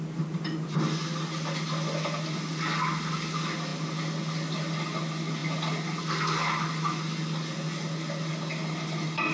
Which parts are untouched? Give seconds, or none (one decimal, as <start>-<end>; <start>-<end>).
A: 0.0-9.3